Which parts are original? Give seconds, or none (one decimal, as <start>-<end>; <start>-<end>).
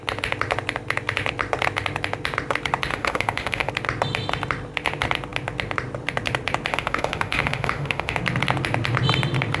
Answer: 0.0-2.9; 3.7-6.7; 8.2-9.6